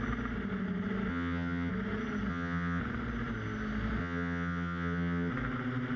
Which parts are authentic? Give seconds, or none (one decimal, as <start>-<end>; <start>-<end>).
0.0-1.1; 1.7-2.3; 2.8-4.0; 5.3-6.0